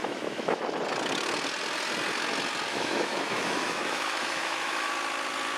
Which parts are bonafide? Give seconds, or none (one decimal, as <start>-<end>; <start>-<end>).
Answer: 0.6-2.7; 4.9-5.6